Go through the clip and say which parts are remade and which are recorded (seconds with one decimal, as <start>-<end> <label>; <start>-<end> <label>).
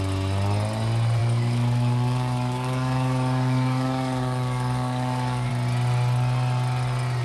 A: 0.0-1.2 recorded; 1.2-5.5 remade; 5.5-7.2 recorded